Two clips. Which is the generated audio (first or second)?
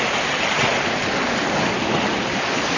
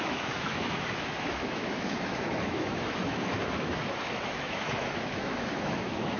second